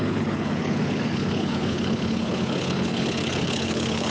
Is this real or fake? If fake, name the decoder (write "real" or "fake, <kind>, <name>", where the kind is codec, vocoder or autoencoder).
fake, codec, HILCodec